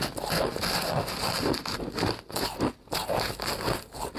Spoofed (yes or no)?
no